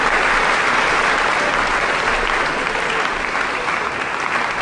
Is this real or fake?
real